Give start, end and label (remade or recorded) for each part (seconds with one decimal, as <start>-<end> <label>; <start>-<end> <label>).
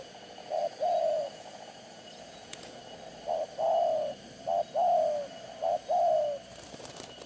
0.0-2.8 remade; 2.8-7.3 recorded